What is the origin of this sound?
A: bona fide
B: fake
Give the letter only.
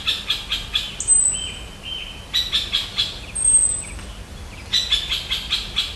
A